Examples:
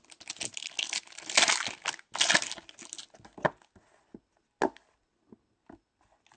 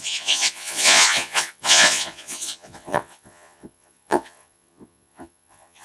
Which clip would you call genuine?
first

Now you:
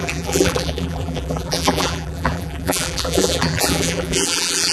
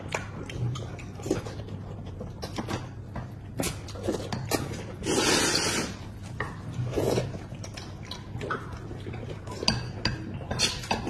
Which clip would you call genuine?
second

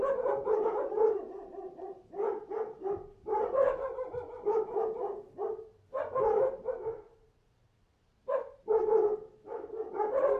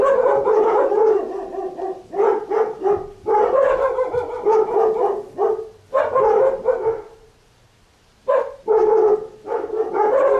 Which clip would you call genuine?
second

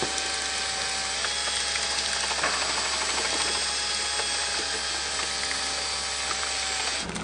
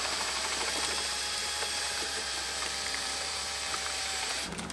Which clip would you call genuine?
first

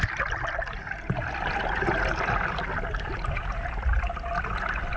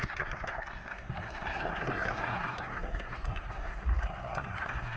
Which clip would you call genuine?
first